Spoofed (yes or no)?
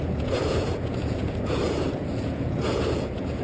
yes